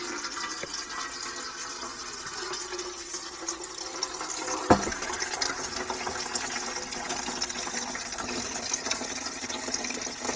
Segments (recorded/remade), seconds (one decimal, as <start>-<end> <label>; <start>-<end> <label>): 0.0-10.4 recorded